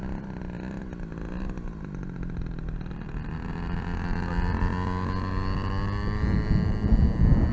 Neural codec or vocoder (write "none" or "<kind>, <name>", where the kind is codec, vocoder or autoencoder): none